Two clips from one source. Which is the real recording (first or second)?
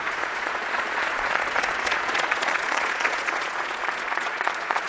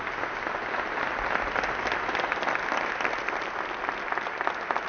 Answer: second